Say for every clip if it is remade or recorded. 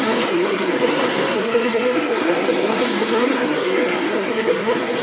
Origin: remade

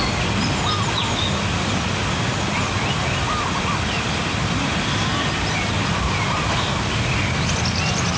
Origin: recorded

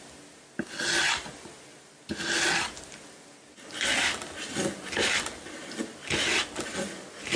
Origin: recorded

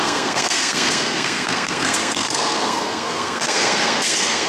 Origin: remade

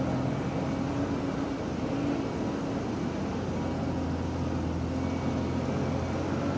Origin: recorded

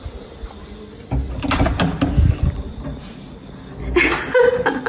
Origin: recorded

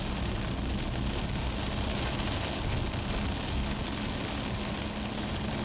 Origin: recorded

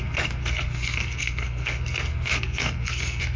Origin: remade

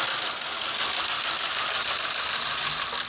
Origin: recorded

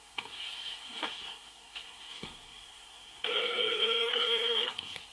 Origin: remade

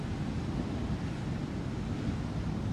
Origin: recorded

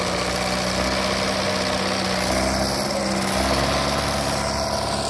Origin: recorded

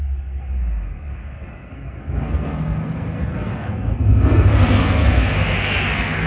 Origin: remade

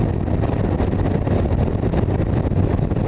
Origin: recorded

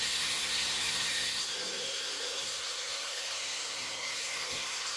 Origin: remade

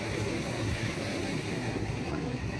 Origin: remade